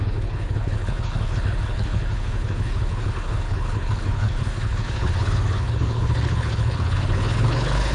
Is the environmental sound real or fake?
fake